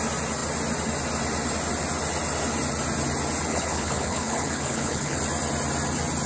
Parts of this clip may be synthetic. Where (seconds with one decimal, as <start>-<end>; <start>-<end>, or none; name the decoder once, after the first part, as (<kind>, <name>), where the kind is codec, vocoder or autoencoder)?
3.5-5.2 (codec, HILCodec)